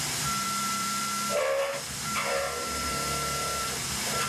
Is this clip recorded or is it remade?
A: remade